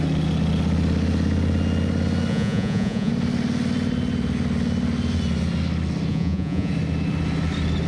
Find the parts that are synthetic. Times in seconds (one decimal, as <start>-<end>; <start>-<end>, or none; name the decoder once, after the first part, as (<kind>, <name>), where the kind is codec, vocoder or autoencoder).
2.3-3.1 (vocoder, Vocos); 6.1-6.7